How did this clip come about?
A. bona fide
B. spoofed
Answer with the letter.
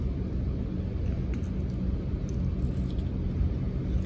A